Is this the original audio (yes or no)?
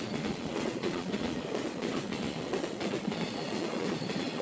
no